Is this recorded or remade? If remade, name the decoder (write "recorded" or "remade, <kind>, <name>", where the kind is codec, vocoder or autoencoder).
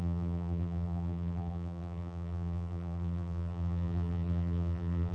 remade, vocoder, BigVGAN v2